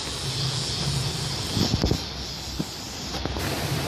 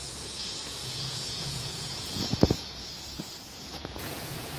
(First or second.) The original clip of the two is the first